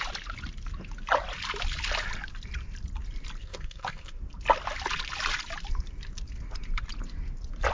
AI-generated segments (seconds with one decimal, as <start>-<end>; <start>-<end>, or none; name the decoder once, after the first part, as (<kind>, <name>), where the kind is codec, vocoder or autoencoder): 3.4-4.2 (codec, SNAC)